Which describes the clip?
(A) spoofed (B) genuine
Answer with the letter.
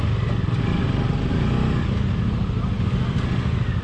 B